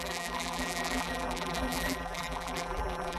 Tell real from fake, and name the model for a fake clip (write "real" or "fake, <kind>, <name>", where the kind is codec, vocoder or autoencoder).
fake, vocoder, BigVGAN v2